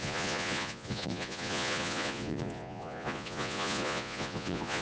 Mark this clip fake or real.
fake